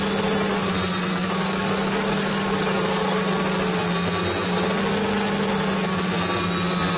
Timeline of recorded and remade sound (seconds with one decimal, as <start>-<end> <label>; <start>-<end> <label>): 0.0-1.1 recorded; 1.1-3.3 remade; 3.3-7.0 recorded